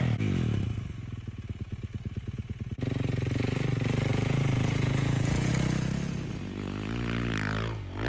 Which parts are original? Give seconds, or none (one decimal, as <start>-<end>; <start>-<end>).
0.0-4.1; 5.5-8.1